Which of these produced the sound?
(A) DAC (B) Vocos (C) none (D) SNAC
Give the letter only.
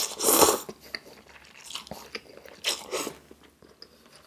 C